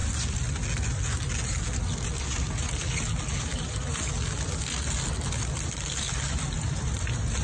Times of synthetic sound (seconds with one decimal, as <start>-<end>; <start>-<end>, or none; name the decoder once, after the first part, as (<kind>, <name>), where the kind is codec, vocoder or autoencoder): none